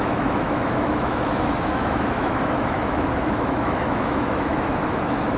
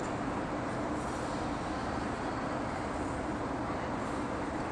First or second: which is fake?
first